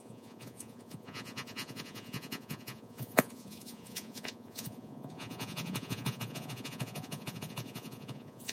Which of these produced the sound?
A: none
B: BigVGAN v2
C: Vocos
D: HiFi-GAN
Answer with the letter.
C